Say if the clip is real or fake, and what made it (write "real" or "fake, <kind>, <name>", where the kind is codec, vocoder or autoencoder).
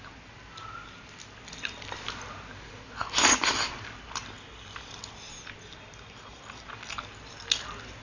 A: real